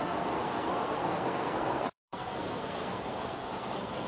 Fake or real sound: fake